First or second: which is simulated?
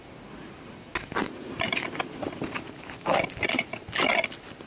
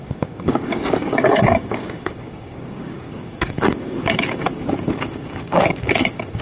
second